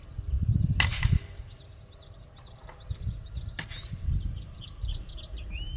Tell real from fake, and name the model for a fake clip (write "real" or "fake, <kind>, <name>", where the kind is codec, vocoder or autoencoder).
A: real